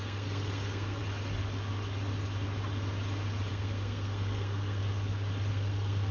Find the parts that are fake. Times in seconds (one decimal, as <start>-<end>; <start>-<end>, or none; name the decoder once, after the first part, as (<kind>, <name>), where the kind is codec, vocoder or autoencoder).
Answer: 0.0-1.0 (codec, SNAC); 3.5-4.8; 5.5-6.1